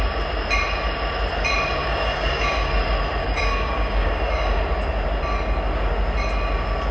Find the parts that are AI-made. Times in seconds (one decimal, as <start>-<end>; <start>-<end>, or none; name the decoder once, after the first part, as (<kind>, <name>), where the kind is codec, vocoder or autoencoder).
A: 1.8-2.7 (codec, DAC); 3.2-4.6